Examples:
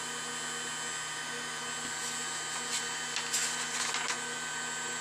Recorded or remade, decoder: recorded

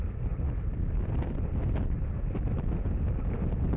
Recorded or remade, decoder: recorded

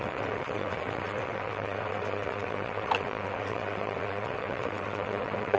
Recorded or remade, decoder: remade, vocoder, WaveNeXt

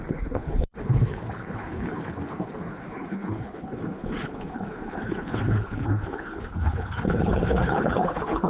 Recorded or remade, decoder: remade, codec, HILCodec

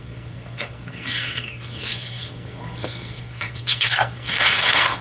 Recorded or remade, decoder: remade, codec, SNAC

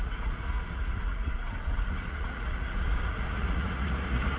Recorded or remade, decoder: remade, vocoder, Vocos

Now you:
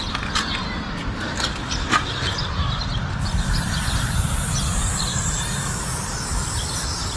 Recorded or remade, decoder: remade, vocoder, BigVGAN v2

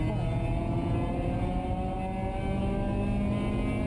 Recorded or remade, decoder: recorded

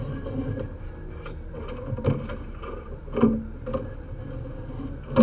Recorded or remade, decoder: recorded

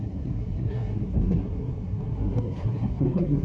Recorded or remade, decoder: remade, codec, SNAC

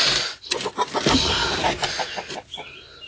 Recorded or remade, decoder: recorded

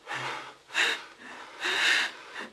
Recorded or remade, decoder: recorded